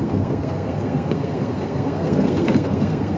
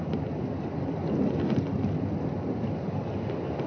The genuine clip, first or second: second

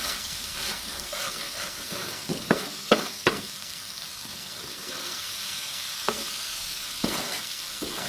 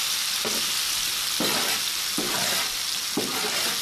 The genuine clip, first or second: second